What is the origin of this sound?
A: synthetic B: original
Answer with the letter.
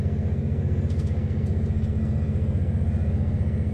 A